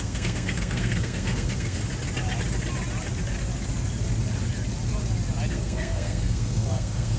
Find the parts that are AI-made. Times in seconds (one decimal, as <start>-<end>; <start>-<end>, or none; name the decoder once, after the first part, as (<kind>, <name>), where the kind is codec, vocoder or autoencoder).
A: 0.0-1.8 (codec, SNAC); 5.5-7.2